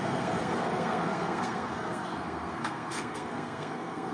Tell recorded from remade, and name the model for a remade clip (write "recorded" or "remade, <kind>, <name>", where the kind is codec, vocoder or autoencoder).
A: remade, codec, SNAC